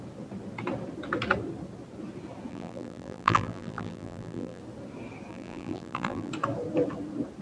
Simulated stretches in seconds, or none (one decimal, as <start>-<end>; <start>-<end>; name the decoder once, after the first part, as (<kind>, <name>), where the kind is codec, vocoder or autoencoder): 2.5-4.6 (vocoder, BigVGAN v2); 5.3-6.3